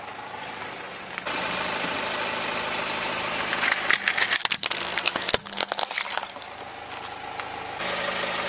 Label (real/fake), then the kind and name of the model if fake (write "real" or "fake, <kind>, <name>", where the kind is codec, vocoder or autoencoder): real